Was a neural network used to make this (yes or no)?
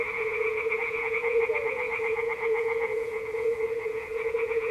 yes